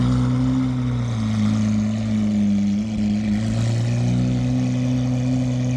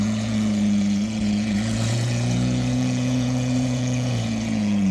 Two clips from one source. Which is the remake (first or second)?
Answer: second